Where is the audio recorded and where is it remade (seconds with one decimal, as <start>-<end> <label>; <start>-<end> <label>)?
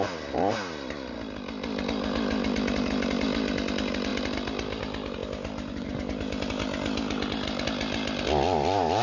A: 0.0-9.0 recorded